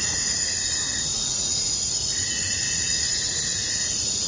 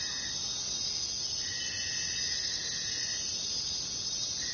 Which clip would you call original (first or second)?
second